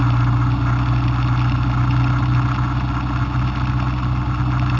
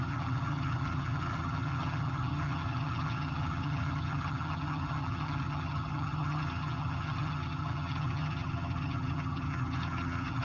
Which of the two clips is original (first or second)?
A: first